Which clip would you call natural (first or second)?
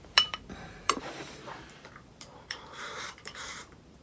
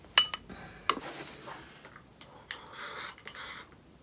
second